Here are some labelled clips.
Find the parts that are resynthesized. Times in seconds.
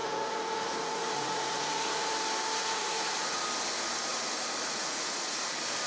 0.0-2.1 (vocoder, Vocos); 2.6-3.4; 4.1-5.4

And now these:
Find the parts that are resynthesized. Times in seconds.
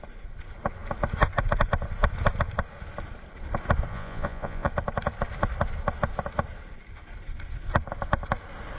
3.9-4.7 (vocoder, Vocos)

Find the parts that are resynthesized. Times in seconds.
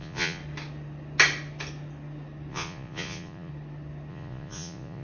0.0-0.4 (vocoder, Vocos); 2.5-3.5; 4.1-5.0